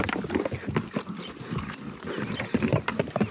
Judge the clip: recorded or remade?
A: recorded